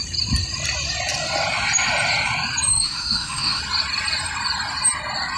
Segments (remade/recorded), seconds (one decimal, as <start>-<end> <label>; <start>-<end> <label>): 0.0-2.7 recorded; 2.7-3.6 remade; 3.6-5.4 recorded